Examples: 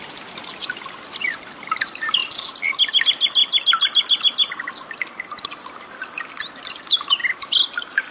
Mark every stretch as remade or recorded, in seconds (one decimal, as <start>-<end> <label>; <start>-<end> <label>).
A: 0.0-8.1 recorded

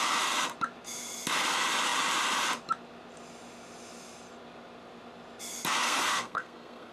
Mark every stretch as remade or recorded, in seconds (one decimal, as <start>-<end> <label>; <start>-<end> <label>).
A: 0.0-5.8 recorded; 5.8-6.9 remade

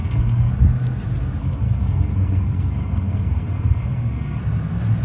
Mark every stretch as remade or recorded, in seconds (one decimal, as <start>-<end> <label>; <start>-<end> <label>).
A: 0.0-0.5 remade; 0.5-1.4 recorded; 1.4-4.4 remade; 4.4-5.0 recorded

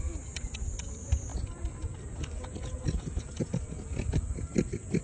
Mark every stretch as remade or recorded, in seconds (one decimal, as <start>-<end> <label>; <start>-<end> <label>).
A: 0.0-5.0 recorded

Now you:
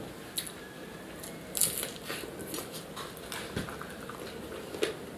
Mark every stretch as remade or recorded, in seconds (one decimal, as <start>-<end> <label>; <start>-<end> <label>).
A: 0.0-5.2 recorded

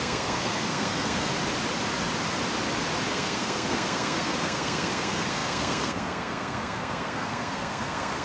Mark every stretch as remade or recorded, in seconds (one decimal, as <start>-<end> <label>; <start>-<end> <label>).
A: 0.0-1.3 remade; 1.3-3.1 recorded; 3.1-8.2 remade